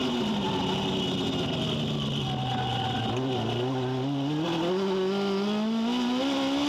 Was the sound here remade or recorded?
recorded